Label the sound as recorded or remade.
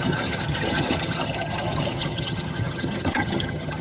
remade